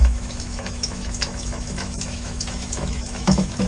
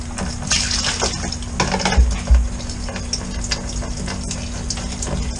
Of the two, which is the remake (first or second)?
first